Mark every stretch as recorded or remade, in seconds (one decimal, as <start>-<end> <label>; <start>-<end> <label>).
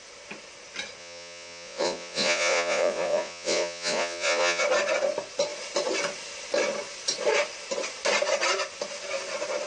0.0-1.0 recorded; 1.0-4.6 remade; 4.6-9.7 recorded